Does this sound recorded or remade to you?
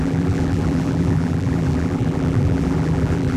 remade